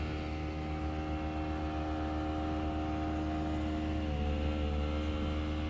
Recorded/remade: recorded